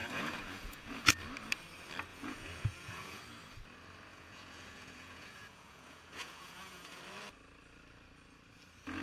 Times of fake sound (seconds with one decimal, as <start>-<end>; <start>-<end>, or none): 0.0-1.1; 2.1-3.2; 4.1-7.0